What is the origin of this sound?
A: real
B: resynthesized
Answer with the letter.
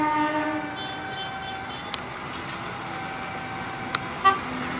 A